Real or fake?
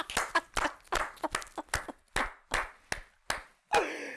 real